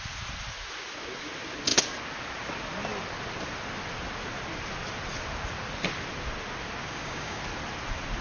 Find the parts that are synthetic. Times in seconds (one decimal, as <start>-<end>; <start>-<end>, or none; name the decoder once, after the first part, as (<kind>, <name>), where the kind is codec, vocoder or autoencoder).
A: 6.8-7.4 (codec, DAC)